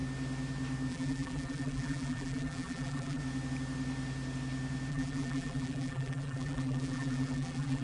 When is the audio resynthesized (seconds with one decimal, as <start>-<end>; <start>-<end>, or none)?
0.9-3.2; 4.9-7.8